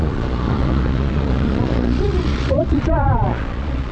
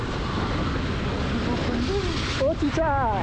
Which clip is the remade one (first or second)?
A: first